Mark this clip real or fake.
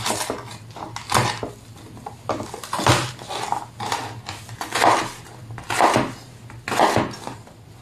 real